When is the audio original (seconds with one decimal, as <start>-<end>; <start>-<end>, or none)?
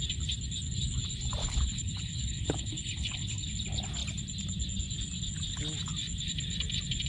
0.0-1.4; 3.5-7.1